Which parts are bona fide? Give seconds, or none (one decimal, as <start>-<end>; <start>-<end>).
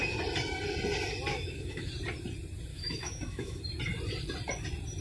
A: 0.0-1.3; 1.9-2.7; 3.6-5.0